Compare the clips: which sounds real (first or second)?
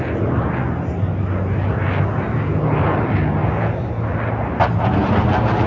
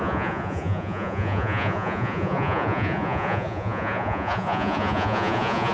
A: first